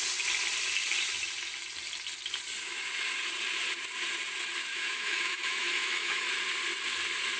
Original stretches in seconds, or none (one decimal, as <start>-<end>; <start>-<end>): 0.0-4.7; 6.3-7.4